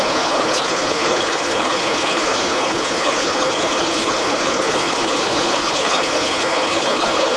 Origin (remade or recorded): remade